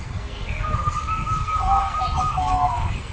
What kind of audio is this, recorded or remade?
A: remade